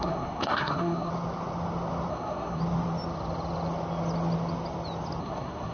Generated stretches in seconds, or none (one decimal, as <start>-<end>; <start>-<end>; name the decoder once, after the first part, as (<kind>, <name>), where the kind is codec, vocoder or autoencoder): 0.0-1.1 (codec, SNAC); 2.1-2.6; 5.2-5.7